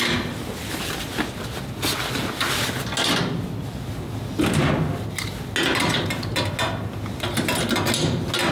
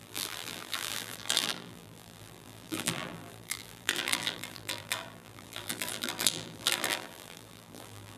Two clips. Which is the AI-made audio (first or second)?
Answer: second